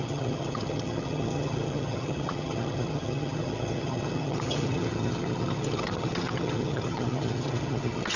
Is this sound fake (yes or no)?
yes